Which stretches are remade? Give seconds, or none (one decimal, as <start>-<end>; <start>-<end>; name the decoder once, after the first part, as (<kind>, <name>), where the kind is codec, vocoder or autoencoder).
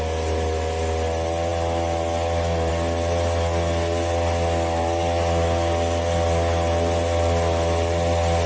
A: none